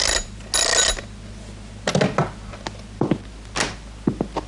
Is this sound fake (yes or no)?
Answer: no